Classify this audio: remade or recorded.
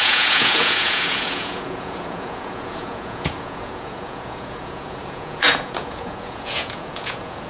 remade